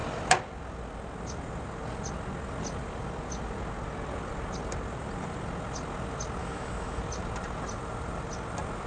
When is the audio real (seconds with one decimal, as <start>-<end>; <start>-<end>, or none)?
0.0-6.4; 7.0-8.9